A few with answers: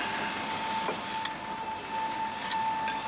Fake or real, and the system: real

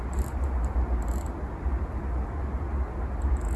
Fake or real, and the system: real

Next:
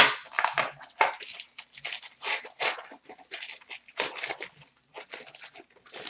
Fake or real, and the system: real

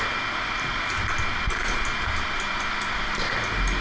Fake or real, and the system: real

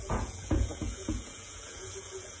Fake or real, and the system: fake, vocoder, Vocos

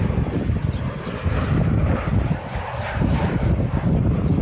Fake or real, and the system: real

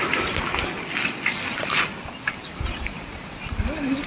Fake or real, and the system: real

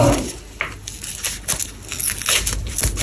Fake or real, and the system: real